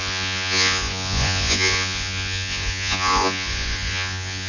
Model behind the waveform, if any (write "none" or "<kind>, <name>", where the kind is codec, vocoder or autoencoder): vocoder, Vocos